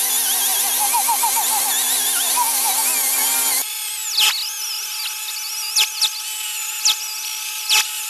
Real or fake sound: real